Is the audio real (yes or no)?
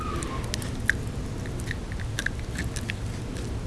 yes